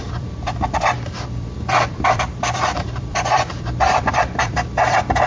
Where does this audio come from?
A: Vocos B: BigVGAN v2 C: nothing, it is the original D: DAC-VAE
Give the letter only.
B